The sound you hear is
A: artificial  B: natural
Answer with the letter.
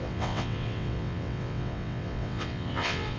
A